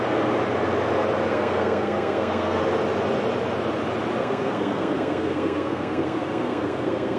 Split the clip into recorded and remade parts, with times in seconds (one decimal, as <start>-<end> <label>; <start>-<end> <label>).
0.0-1.3 recorded; 1.3-2.6 remade; 2.6-4.2 recorded; 4.2-7.2 remade

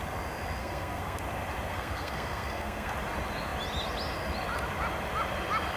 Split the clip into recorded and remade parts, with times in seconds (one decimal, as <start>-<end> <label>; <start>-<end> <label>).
0.0-0.6 recorded; 0.6-1.2 remade; 1.2-1.7 recorded; 1.7-2.9 remade; 2.9-5.8 recorded

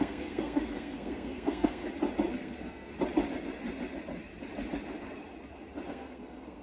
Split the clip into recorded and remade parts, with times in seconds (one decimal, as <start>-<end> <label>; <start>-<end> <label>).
0.0-1.8 remade; 1.8-2.3 recorded; 2.3-2.9 remade; 2.9-5.9 recorded; 5.9-6.6 remade

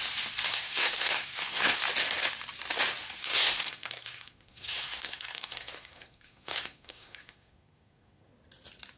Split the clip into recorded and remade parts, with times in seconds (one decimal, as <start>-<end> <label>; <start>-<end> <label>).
0.0-0.5 recorded; 0.5-1.8 remade; 1.8-3.2 recorded; 3.2-8.3 remade; 8.3-9.0 recorded

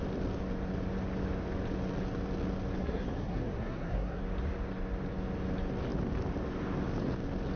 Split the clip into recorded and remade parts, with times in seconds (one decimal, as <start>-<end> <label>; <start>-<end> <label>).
0.0-2.8 recorded; 2.8-4.2 remade; 4.2-7.6 recorded

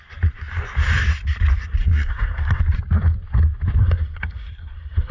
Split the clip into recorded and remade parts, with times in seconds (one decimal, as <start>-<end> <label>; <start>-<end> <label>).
0.0-1.8 recorded; 1.8-2.6 remade; 2.6-3.8 recorded; 3.8-5.1 remade